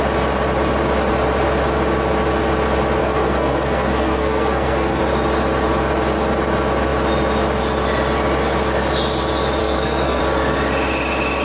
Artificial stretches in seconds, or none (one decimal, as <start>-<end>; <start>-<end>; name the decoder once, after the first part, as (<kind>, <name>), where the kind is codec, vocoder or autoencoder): 3.0-5.0 (codec, SNAC); 9.6-10.2